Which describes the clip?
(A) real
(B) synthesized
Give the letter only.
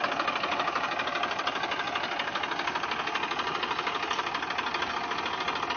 A